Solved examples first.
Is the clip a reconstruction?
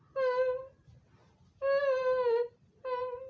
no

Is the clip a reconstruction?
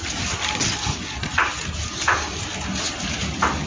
no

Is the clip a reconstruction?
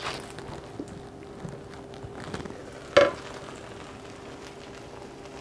no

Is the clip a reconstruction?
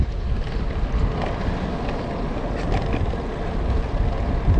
no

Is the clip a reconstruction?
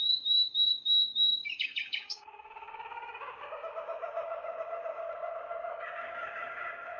yes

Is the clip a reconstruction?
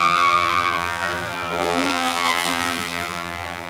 yes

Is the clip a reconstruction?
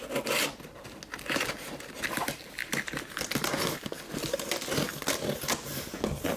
no